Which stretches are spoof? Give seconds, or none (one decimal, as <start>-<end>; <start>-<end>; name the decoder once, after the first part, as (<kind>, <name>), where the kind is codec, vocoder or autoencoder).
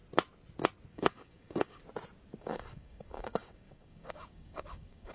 0.9-1.8 (codec, DAC); 2.4-5.1